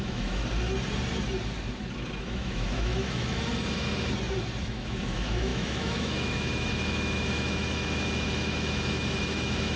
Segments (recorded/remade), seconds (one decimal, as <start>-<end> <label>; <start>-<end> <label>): 0.0-0.4 remade; 0.4-2.2 recorded; 2.2-3.5 remade; 3.5-4.6 recorded; 4.6-9.8 remade